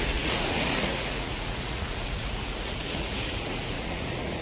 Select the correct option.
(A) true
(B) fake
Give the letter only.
B